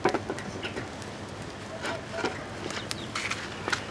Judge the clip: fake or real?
real